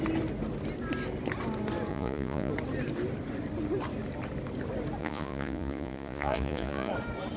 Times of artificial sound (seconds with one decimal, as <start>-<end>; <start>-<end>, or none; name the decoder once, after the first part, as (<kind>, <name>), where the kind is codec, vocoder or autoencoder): 1.9-2.5 (vocoder, Vocos); 5.0-6.9